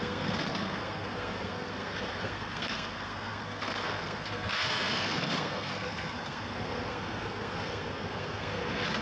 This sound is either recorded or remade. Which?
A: remade